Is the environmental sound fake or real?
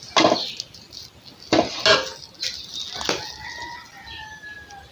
real